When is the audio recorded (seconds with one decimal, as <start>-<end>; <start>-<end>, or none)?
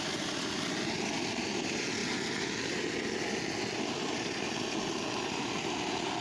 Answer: 0.0-6.2